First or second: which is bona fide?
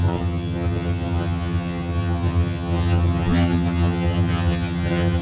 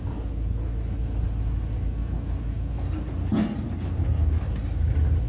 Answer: second